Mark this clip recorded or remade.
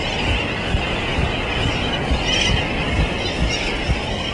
recorded